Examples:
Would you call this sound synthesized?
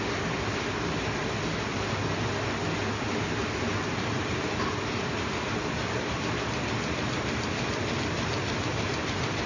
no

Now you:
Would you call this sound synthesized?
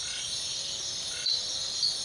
no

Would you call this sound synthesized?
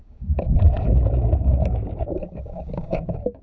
yes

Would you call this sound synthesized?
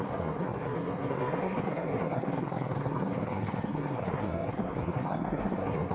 yes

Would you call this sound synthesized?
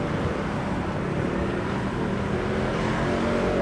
no